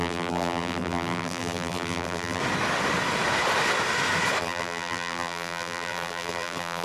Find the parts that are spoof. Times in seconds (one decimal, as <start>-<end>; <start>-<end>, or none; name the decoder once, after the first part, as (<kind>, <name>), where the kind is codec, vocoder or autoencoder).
0.0-2.4 (vocoder, BigVGAN v2); 4.4-6.8